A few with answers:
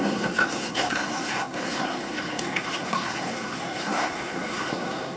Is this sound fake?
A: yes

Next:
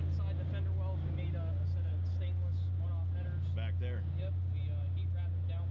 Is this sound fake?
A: no